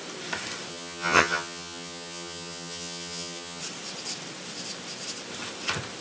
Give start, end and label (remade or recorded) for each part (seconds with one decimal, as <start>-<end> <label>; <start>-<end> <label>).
0.0-0.7 recorded; 0.7-3.6 remade; 3.6-6.0 recorded